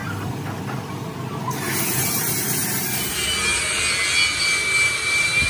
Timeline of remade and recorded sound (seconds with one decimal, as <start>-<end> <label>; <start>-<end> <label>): 0.0-5.5 recorded